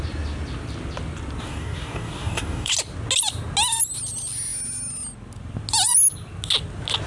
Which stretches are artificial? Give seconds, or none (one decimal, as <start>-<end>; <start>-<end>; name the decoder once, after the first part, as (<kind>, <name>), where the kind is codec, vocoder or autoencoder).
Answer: 1.4-2.7 (codec, DAC)